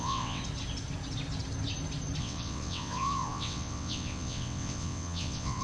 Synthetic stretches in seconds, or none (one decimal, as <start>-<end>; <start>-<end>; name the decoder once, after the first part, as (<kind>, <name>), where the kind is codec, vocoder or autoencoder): 0.0-0.4 (vocoder, WaveNeXt); 2.2-5.6